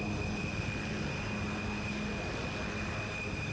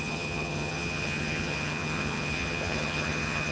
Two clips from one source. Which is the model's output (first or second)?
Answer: second